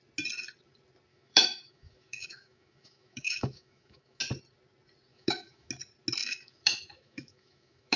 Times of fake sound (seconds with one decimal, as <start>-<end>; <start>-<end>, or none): 1.1-4.2; 5.1-5.7; 6.2-8.0